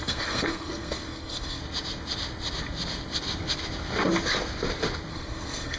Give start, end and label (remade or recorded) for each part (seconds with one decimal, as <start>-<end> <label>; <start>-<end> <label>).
0.0-1.6 remade; 1.6-5.1 recorded; 5.1-5.8 remade